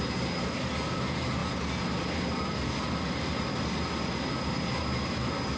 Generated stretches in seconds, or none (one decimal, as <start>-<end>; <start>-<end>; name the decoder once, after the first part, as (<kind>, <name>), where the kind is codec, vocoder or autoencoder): none